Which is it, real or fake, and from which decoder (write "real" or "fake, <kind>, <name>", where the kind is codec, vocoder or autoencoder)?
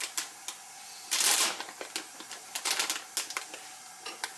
real